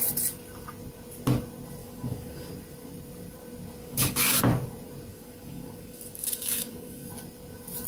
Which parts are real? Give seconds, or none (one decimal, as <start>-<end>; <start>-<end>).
0.0-1.8; 2.5-3.8; 4.4-5.1; 7.1-7.9